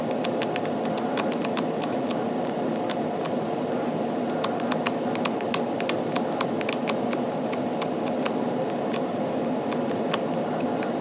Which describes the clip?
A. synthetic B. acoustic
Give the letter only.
B